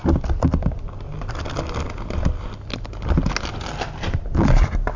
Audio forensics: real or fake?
real